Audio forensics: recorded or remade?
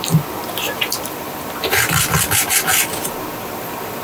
remade